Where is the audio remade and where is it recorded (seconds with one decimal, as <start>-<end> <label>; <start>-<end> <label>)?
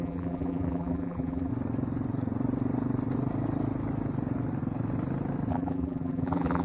0.0-1.5 remade; 1.5-5.5 recorded; 5.5-6.6 remade